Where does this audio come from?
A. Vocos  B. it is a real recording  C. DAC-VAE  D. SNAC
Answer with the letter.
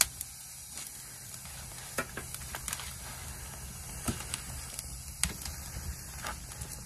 B